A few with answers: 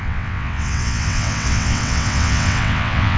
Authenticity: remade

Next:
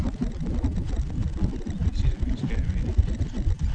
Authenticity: recorded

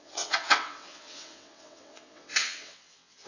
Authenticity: remade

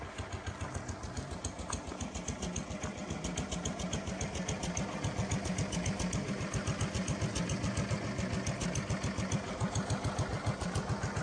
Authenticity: recorded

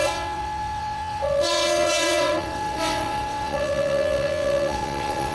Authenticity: remade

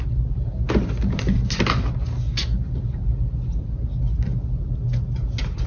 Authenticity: recorded